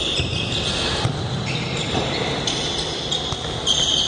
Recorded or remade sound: recorded